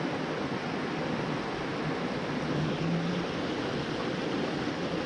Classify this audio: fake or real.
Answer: real